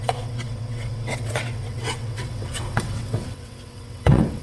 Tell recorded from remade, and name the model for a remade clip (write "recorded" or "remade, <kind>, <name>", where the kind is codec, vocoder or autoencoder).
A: remade, vocoder, WaveNeXt